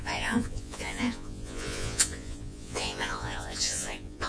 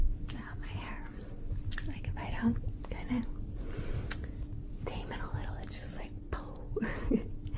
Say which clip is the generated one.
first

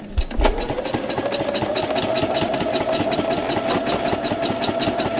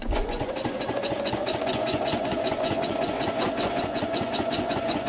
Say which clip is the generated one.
second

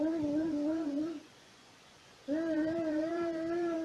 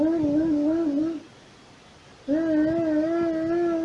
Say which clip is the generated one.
first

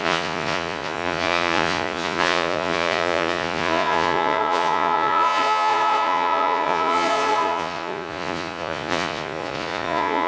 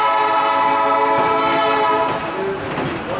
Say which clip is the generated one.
first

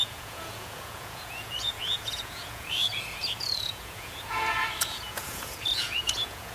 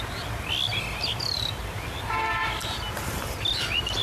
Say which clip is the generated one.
first